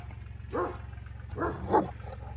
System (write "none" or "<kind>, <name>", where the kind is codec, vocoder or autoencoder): none